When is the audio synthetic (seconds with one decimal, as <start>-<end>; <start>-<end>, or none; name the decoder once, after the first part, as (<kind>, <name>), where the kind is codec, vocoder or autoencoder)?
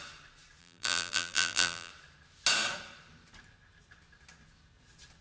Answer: 0.6-1.9 (vocoder, BigVGAN v2)